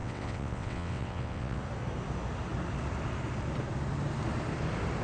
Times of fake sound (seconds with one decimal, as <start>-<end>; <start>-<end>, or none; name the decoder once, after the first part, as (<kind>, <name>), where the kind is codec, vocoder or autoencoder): 0.0-1.6 (vocoder, WaveNeXt)